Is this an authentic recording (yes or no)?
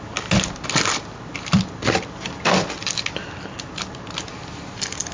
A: yes